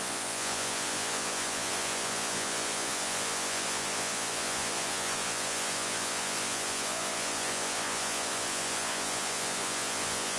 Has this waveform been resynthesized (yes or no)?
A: yes